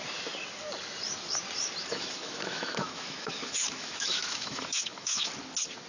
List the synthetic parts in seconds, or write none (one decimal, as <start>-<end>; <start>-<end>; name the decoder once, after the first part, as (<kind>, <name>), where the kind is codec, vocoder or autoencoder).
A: 1.8-5.3 (autoencoder, DAC-VAE)

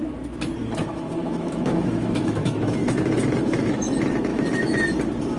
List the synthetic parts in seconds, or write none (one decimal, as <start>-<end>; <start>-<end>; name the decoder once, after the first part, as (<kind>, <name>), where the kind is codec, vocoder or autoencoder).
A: 0.6-3.8 (autoencoder, DAC-VAE); 4.3-4.8

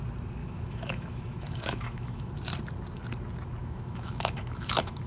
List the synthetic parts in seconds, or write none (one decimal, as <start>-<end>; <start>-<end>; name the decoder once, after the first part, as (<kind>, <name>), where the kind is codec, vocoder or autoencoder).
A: 0.4-2.3 (autoencoder, DAC-VAE); 3.6-5.1

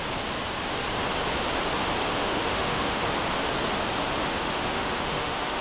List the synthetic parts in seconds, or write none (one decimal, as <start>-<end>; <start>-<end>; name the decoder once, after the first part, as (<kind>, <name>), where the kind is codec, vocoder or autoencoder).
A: 2.2-3.0 (autoencoder, DAC-VAE); 4.2-5.6